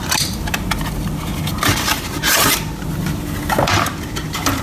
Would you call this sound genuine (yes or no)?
yes